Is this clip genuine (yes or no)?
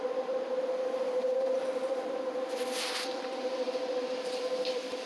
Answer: no